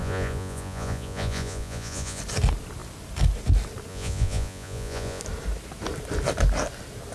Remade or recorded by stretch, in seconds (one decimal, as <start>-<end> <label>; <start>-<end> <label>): 0.0-2.2 remade; 2.2-3.9 recorded; 3.9-5.2 remade; 5.2-7.1 recorded